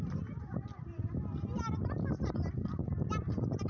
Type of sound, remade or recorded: recorded